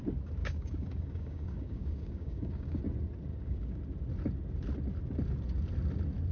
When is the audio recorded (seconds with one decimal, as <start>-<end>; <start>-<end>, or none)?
0.0-0.4; 2.8-3.3; 3.8-6.3